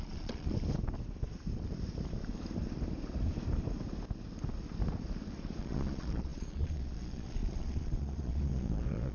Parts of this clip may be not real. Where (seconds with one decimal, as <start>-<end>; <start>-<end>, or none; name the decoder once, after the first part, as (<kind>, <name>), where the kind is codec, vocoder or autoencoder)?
0.0-0.5 (vocoder, Vocos); 5.6-9.1